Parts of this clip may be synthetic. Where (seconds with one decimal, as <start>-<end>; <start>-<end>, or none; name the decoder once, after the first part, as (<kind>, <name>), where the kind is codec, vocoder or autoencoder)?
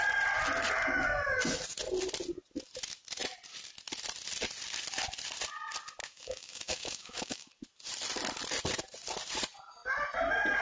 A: 6.0-7.5 (autoencoder, DAC-VAE)